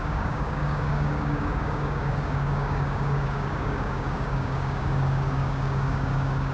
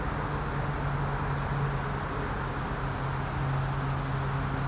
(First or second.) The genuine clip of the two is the second